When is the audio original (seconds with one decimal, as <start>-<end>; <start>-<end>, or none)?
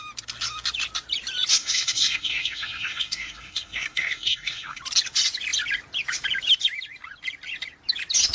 0.0-1.5; 4.8-8.3